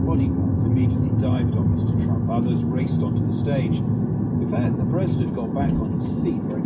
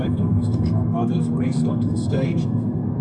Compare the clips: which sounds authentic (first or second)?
first